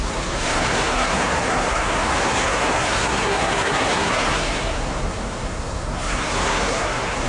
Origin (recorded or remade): remade